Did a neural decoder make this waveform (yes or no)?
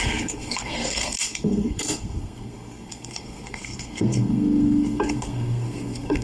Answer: yes